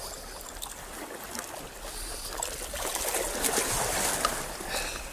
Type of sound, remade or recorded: recorded